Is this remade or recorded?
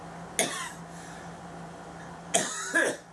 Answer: recorded